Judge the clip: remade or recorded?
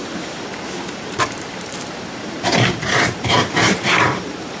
remade